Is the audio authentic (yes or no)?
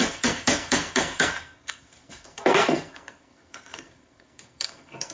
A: no